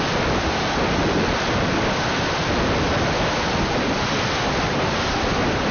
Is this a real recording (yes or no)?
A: yes